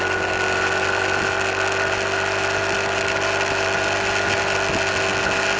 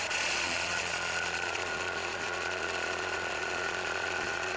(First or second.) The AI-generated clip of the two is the second